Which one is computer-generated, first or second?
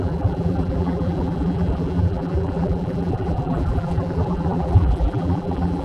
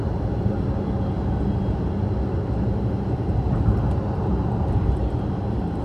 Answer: first